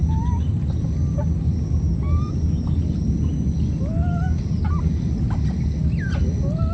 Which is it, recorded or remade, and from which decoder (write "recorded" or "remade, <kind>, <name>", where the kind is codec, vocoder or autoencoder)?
recorded